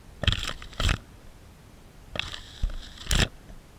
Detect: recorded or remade recorded